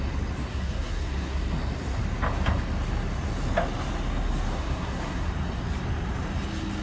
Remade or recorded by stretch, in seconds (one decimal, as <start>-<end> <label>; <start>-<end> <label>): 0.0-0.5 recorded; 0.5-1.4 remade; 1.4-4.5 recorded; 4.5-5.3 remade; 5.3-6.8 recorded